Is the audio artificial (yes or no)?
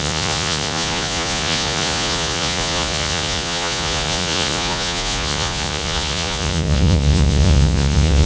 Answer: yes